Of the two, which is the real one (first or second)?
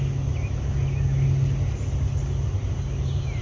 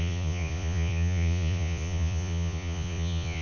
first